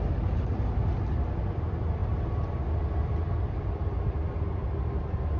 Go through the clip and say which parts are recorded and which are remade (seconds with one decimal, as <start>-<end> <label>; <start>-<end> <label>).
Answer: 0.0-5.4 recorded